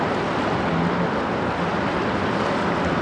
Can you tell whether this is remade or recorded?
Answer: recorded